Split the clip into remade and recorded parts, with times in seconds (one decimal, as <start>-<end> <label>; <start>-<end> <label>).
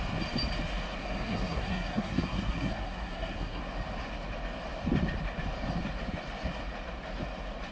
0.0-1.0 recorded; 1.0-3.6 remade; 3.6-7.7 recorded